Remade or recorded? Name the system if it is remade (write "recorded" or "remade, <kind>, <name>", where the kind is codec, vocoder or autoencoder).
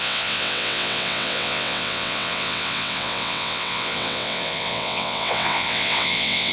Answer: remade, vocoder, WaveNeXt